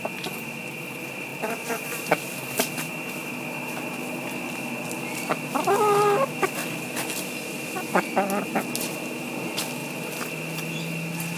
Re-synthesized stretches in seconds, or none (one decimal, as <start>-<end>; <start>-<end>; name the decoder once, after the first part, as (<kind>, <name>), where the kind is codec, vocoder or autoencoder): 1.3-3.9 (vocoder, BigVGAN v2); 9.8-10.8